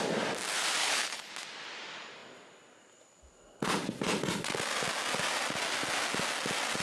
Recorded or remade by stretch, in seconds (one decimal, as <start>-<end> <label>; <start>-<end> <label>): 0.0-0.8 recorded; 0.8-1.3 remade; 1.3-6.8 recorded